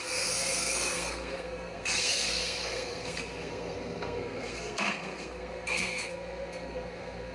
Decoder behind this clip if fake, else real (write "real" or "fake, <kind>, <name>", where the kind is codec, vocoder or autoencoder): fake, codec, SNAC